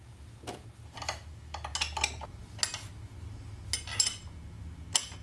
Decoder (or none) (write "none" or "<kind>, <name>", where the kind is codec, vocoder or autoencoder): none